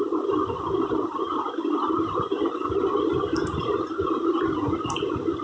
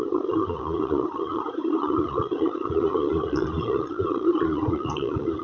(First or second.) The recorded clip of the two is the first